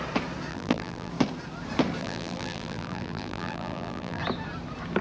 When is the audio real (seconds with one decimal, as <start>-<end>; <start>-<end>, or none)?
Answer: 0.0-0.5; 1.1-2.0; 4.2-5.0